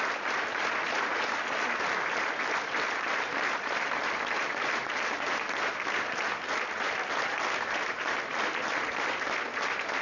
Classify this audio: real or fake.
real